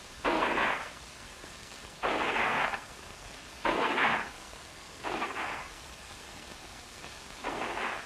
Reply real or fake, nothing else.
fake